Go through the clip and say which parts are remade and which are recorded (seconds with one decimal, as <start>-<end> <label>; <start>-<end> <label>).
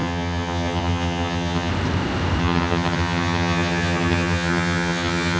0.0-1.7 remade; 1.7-2.4 recorded; 2.4-5.4 remade